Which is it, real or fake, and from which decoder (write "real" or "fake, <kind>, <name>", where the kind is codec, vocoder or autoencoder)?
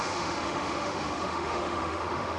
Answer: fake, autoencoder, DAC-VAE